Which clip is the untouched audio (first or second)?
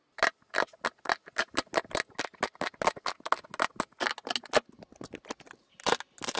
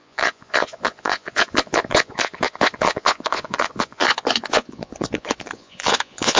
first